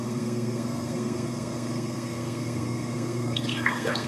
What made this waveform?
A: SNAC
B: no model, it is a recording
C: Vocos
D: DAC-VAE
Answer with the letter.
A